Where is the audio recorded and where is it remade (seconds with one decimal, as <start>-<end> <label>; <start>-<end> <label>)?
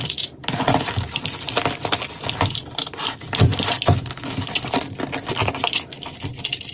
0.0-6.7 recorded